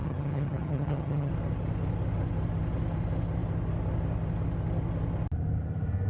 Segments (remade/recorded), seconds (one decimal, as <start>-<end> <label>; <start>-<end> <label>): 0.0-1.3 remade; 1.3-6.1 recorded

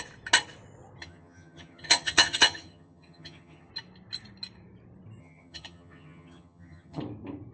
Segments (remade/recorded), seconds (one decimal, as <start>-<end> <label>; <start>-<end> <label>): 0.0-1.0 recorded; 1.0-3.7 remade; 3.7-5.2 recorded; 5.2-7.0 remade; 7.0-7.5 recorded

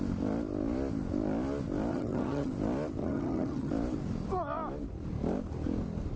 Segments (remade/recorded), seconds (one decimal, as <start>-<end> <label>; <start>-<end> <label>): 0.0-1.9 recorded; 1.9-2.5 remade; 2.5-3.0 recorded; 3.0-3.7 remade; 3.7-6.2 recorded

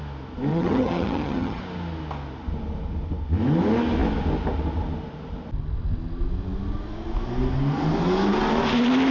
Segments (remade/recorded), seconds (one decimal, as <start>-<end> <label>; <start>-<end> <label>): 0.0-0.5 recorded; 0.5-1.6 remade; 1.6-9.1 recorded

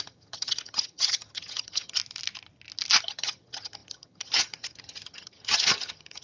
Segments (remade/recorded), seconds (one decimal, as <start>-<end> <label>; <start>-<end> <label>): 0.0-2.0 remade; 2.0-3.0 recorded; 3.0-6.2 remade